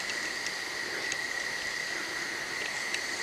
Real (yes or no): yes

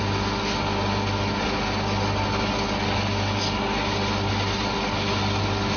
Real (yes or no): yes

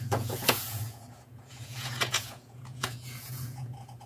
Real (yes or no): no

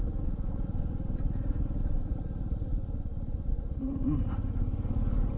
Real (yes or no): yes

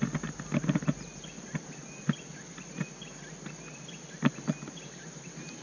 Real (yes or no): yes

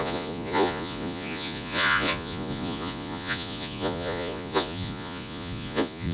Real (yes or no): no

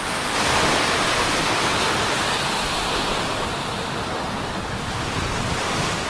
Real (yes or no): yes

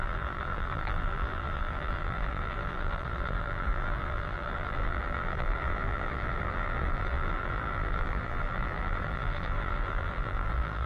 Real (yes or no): no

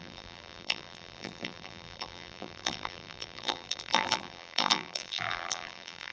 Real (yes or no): no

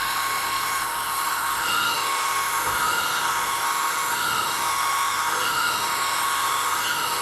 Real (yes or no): no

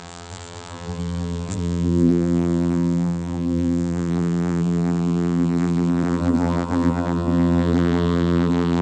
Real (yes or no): no